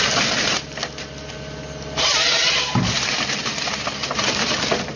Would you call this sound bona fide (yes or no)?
yes